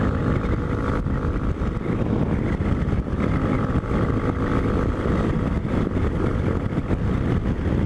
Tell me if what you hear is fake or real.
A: real